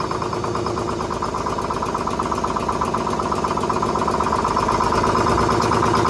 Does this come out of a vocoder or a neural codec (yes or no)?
no